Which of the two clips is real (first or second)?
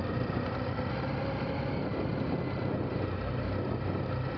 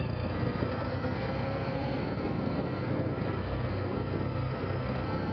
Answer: first